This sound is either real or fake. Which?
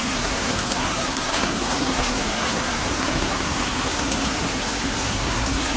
fake